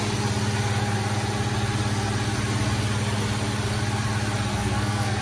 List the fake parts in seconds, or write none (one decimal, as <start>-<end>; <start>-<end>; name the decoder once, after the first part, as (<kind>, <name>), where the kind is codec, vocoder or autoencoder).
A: 4.5-5.2 (codec, SNAC)